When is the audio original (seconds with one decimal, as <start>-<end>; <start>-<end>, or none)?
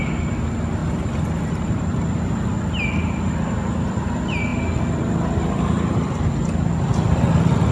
0.0-0.8; 2.3-7.7